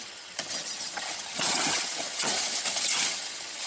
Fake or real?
fake